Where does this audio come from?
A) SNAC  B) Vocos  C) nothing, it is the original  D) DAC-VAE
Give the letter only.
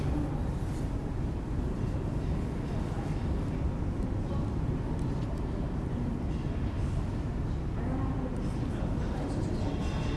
C